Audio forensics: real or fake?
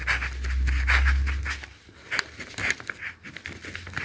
real